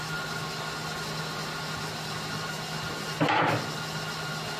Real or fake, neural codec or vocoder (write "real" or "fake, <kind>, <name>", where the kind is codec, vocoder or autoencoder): real